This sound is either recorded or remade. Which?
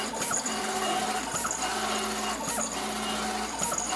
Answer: recorded